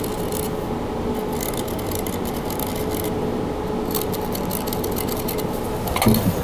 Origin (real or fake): real